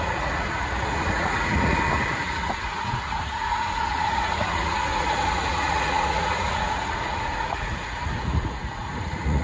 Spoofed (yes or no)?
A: yes